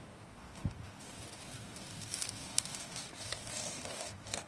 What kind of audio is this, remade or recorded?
remade